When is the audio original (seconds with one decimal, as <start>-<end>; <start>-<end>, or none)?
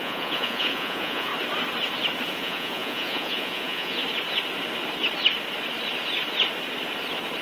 1.3-2.3; 4.0-7.4